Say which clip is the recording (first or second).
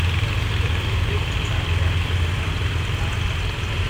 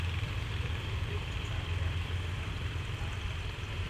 first